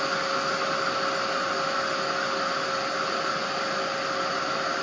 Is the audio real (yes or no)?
yes